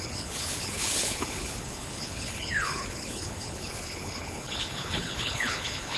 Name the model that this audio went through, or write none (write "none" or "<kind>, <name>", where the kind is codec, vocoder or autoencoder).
codec, HILCodec